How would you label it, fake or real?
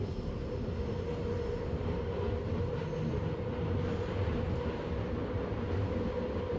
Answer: real